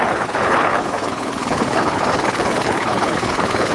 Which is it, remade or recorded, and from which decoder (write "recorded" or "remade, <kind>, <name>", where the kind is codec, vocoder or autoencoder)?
remade, codec, HILCodec